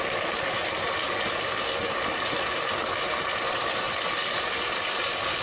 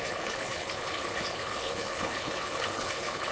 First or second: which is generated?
second